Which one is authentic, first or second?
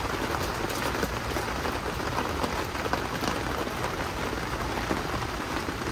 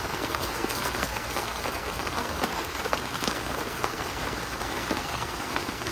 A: first